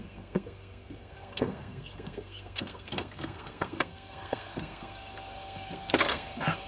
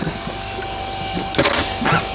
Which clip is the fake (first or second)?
first